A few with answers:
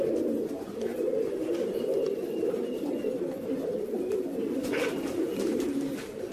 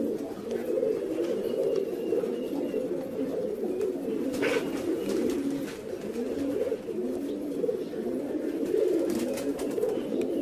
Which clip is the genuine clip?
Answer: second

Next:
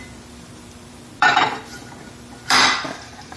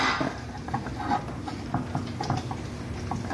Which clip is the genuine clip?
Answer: second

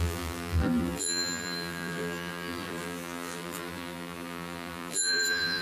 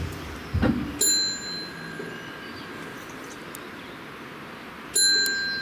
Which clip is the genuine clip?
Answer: second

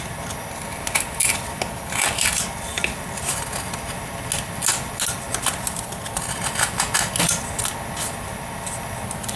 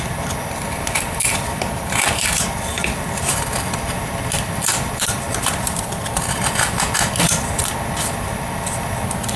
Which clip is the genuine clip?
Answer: first